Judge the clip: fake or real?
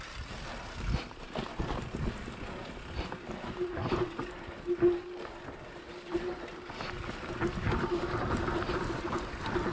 real